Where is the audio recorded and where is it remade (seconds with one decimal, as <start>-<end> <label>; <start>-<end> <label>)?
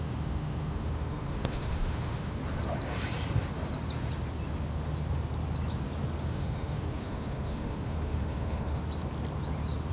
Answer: 0.0-2.4 remade; 2.4-6.3 recorded; 6.3-8.8 remade; 8.8-9.9 recorded